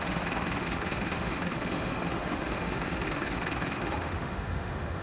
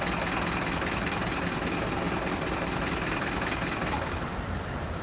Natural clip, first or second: second